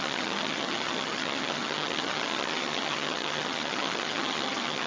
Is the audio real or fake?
fake